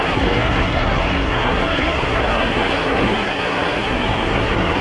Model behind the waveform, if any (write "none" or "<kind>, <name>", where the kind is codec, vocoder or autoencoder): codec, SNAC